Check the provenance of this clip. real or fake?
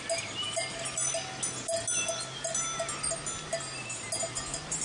real